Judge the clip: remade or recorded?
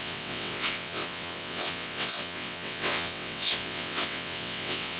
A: remade